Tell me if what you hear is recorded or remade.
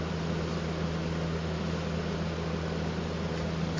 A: recorded